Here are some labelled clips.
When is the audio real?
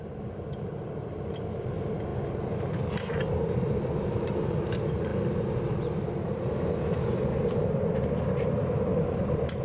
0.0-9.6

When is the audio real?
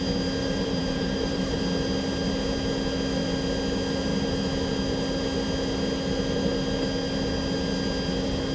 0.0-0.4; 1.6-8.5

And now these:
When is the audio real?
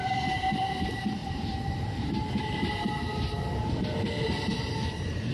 none